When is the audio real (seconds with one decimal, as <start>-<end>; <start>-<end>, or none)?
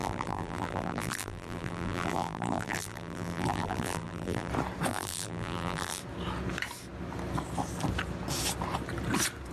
4.5-4.9; 6.0-9.5